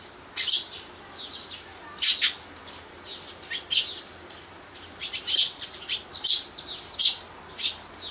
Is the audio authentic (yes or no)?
yes